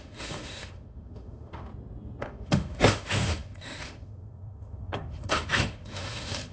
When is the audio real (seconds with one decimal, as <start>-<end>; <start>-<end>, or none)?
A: 1.7-2.2